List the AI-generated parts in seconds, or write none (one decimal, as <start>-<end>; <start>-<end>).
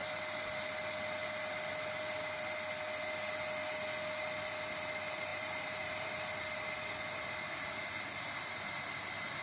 5.3-6.1